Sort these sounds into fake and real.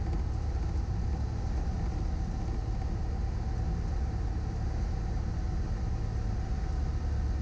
real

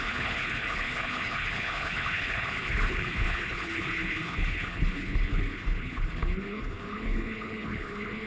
fake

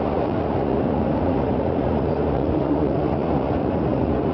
fake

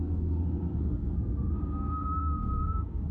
fake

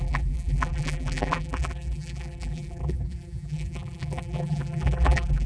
fake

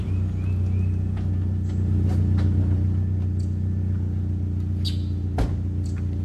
real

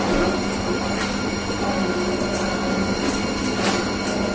real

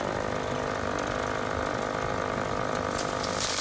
real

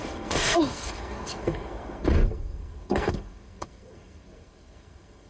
fake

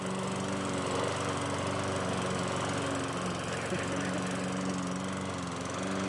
real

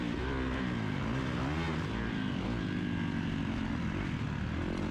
real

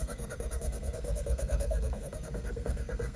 fake